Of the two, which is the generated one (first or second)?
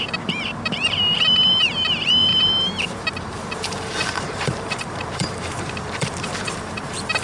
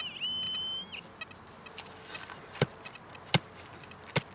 first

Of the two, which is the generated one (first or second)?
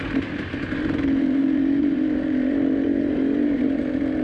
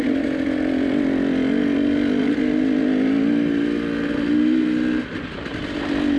first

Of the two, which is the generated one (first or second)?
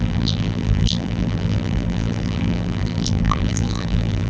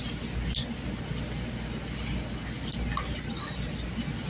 first